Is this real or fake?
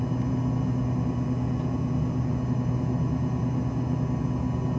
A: real